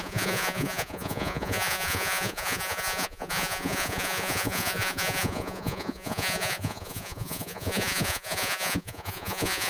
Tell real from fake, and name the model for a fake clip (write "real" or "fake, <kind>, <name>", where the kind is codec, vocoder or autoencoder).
fake, vocoder, Vocos